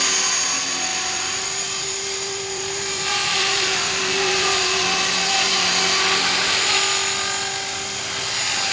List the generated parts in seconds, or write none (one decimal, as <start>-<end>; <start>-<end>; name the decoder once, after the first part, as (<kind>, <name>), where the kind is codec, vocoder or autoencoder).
0.9-5.7 (vocoder, BigVGAN v2)